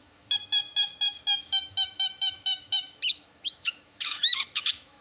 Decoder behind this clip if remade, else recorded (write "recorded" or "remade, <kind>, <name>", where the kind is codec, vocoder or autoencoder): remade, autoencoder, DAC-VAE